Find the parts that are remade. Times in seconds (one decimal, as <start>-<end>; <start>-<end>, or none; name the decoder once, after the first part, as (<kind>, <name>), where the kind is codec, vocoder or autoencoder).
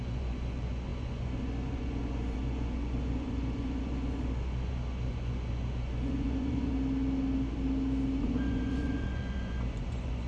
0.0-6.7 (vocoder, Vocos); 8.2-10.3